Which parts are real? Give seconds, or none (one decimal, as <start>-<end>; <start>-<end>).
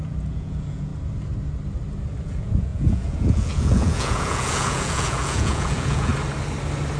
0.9-2.2; 6.1-7.0